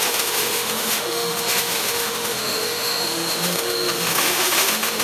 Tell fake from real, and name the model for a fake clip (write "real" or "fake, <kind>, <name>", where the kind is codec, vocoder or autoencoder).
fake, autoencoder, DAC-VAE